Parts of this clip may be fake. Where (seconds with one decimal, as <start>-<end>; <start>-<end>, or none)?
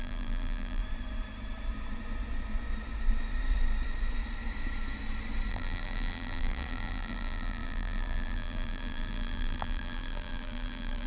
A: 0.0-0.8; 5.5-11.1